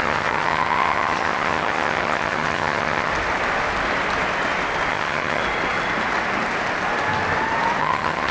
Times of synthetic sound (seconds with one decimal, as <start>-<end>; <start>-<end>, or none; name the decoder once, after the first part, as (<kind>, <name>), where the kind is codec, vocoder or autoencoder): 0.0-3.1 (vocoder, HiFi-GAN); 4.9-5.4; 7.8-8.3